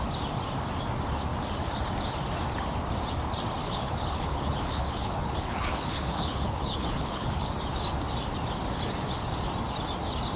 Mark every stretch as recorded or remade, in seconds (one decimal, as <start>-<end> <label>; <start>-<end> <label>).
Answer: 0.0-3.6 recorded; 3.6-7.5 remade; 7.5-10.4 recorded